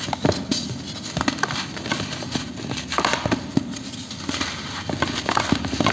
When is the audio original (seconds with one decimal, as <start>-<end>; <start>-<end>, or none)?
0.0-5.9